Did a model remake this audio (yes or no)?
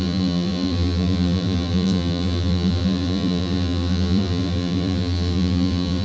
yes